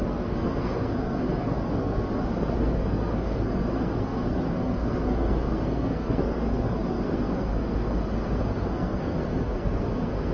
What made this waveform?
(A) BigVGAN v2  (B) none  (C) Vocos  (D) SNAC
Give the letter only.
D